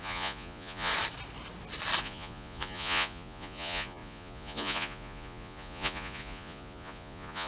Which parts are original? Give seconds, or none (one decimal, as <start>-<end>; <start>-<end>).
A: 0.9-2.0